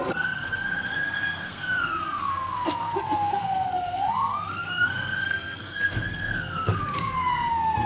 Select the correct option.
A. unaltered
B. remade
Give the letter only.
B